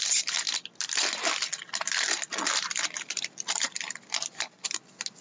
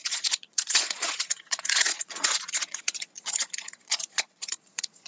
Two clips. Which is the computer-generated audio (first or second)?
second